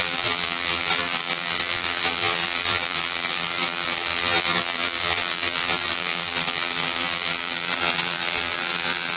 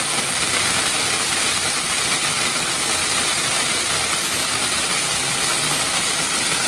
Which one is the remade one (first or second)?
first